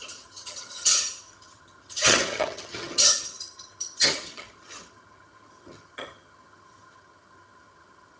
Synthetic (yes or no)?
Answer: yes